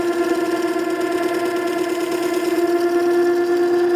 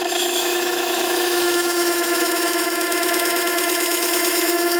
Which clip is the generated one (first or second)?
second